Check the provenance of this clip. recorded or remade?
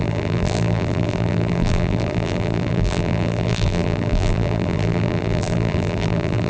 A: remade